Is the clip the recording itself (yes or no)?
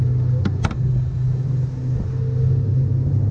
yes